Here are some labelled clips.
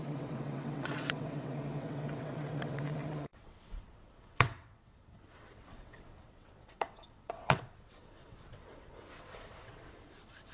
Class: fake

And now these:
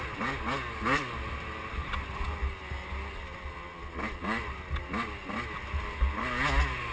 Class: real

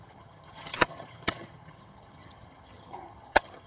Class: fake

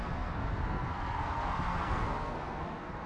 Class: fake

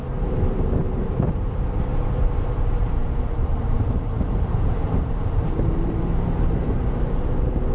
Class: fake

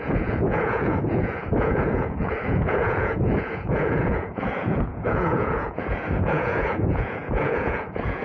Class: fake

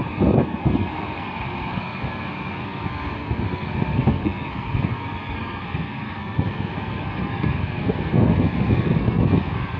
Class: fake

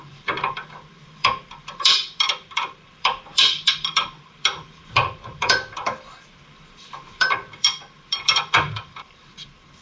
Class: fake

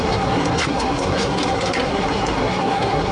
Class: fake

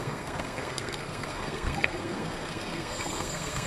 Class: fake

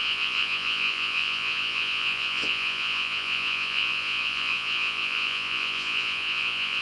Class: fake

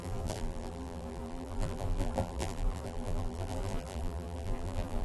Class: fake